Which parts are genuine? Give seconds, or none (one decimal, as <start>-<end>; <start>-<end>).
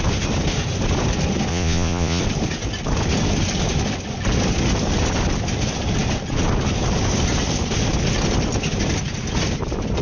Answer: 0.0-1.5; 2.2-10.0